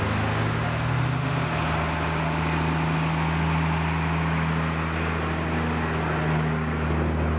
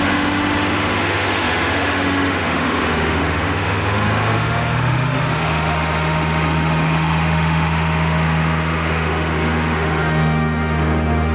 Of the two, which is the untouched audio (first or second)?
first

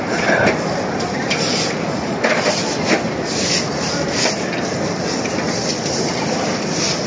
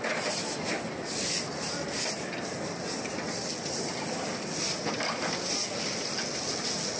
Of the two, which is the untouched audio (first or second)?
second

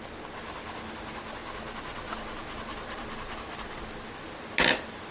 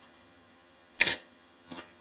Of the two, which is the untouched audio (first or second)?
first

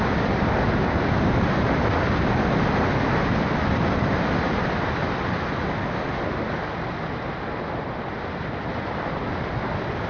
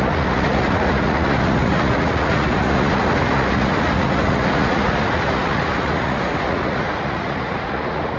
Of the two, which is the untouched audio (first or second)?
first